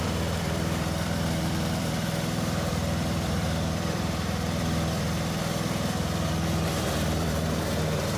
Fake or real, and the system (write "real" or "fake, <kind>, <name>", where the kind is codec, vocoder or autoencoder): fake, vocoder, BigVGAN v2